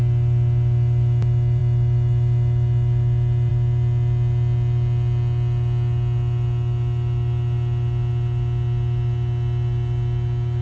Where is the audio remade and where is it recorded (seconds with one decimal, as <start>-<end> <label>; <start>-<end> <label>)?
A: 0.0-10.6 recorded